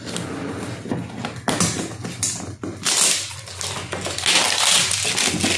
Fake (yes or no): no